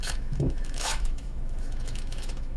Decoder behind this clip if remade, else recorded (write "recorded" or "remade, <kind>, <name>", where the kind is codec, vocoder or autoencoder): remade, autoencoder, DAC-VAE